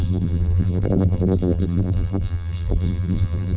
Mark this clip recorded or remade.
remade